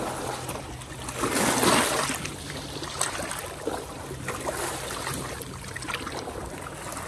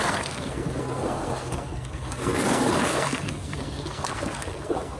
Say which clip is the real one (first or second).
first